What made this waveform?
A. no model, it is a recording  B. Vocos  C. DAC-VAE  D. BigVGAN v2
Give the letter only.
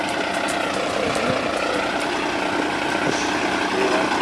A